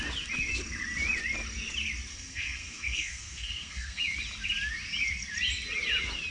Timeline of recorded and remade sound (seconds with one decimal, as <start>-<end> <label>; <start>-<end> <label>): 0.0-2.1 recorded; 2.1-4.0 remade; 4.0-6.3 recorded